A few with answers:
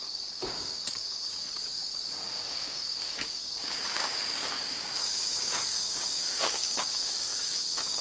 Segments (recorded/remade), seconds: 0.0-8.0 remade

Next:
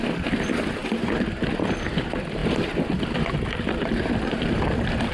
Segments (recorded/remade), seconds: 0.0-2.4 remade; 2.4-4.1 recorded; 4.1-5.1 remade